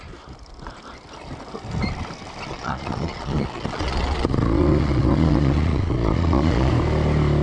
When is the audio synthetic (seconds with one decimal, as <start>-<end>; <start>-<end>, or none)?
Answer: 2.5-6.7